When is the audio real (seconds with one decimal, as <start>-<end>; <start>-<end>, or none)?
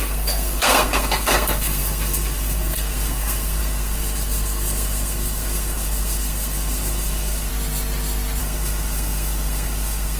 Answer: 7.5-8.4